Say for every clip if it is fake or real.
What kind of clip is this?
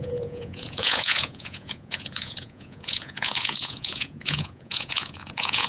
fake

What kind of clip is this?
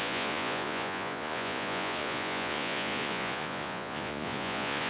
fake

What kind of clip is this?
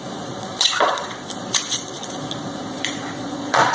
fake